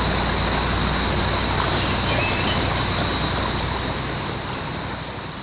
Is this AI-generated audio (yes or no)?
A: no